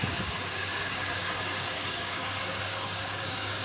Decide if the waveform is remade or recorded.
remade